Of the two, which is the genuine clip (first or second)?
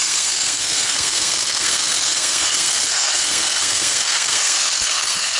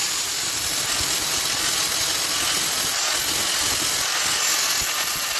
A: second